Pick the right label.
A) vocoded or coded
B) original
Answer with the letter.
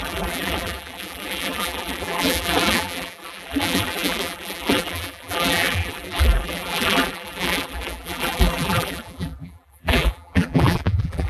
A